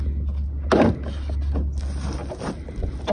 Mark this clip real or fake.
real